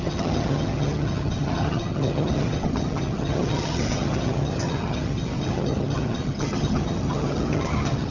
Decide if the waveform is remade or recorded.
remade